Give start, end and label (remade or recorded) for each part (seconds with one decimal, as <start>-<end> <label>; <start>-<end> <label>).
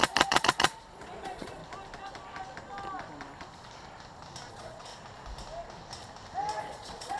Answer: 0.0-1.6 remade; 1.6-4.5 recorded; 4.5-4.9 remade; 4.9-6.6 recorded; 6.6-7.2 remade